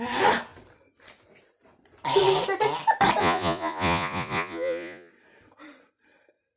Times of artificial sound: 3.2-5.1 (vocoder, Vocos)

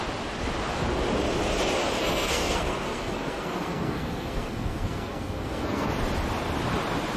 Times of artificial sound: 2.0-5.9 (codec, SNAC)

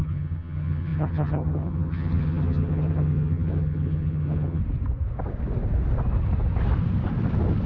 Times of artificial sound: 0.0-4.6 (vocoder, HiFi-GAN)